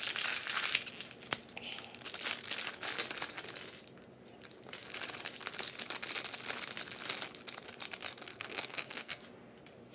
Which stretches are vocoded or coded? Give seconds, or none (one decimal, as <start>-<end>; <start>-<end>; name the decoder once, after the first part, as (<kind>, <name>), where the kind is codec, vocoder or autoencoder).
8.3-9.2 (codec, SNAC)